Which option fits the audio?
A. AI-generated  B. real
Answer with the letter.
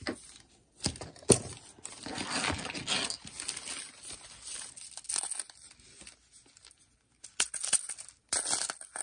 B